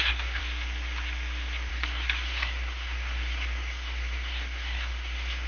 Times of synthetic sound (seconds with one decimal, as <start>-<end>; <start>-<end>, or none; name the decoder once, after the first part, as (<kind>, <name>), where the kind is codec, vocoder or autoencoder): 0.0-0.4 (codec, SNAC); 1.7-5.5